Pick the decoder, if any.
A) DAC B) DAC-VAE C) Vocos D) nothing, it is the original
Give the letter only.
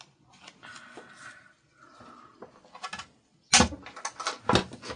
D